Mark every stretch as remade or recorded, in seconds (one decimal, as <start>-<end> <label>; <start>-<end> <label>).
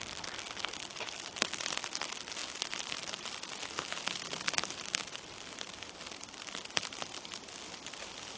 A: 0.0-8.4 recorded